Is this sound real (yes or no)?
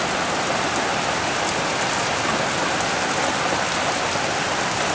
yes